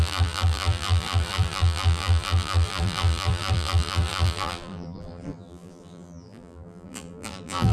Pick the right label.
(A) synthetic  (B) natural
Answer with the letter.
A